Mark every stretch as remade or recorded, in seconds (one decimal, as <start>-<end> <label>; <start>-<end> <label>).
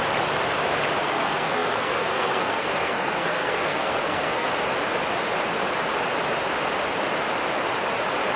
0.0-1.0 recorded; 1.0-4.5 remade; 4.5-8.4 recorded